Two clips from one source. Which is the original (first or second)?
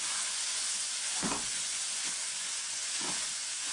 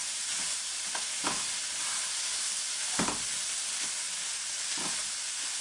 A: second